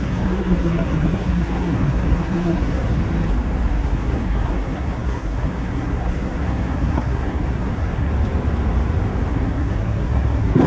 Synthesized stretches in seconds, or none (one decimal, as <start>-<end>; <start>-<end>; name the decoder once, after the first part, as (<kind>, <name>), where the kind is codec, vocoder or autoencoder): 0.0-3.0 (codec, SNAC); 3.7-8.1; 9.3-10.7